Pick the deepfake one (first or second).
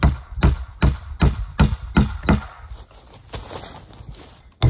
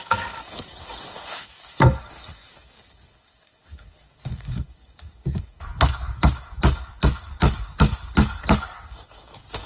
second